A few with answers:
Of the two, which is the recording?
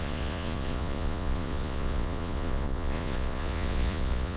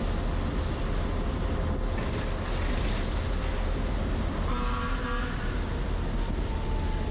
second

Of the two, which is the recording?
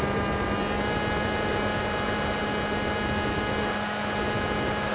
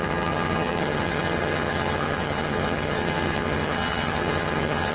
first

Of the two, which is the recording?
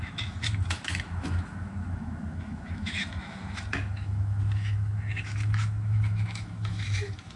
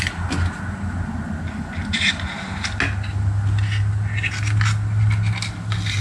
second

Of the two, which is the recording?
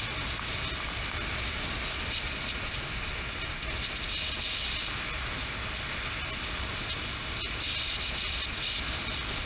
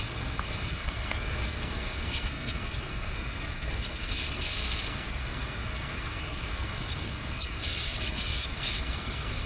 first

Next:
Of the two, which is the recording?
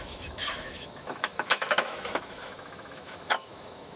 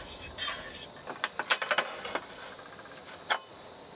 second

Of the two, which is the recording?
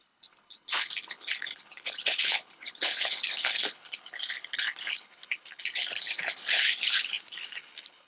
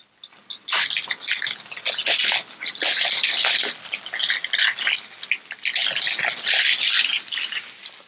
second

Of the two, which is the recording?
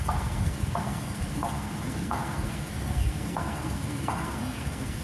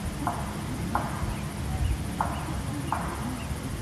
second